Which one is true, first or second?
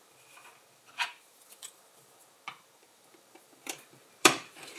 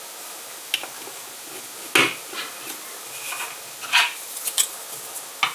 second